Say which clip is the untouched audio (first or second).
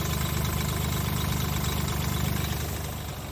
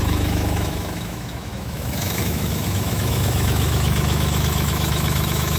first